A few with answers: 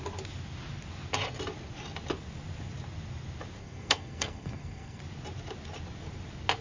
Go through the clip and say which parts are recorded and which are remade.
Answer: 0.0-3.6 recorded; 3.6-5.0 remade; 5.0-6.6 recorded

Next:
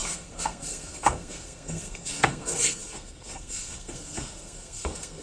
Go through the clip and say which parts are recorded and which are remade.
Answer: 0.0-5.2 remade